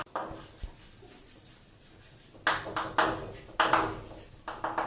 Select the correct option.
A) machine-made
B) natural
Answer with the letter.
B